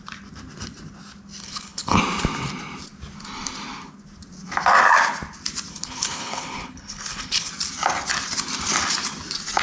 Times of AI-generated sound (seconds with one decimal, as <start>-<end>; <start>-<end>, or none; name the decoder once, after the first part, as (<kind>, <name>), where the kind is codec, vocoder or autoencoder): 1.4-2.0 (codec, HILCodec); 5.7-7.5